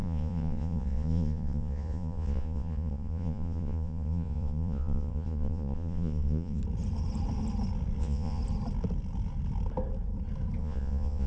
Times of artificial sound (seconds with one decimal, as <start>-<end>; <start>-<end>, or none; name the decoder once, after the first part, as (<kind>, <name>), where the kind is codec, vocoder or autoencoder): 0.0-6.6 (vocoder, Vocos); 8.0-8.4; 10.6-11.3